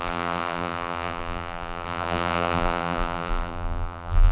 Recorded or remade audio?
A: remade